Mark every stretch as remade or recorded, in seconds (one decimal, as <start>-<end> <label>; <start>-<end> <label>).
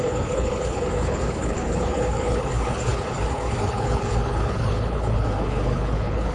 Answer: 0.0-6.3 remade